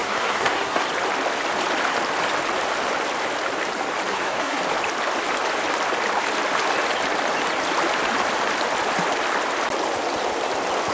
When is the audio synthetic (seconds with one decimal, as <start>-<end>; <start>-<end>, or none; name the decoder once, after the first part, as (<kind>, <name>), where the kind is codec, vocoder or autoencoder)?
0.0-0.8 (codec, SNAC); 4.1-4.6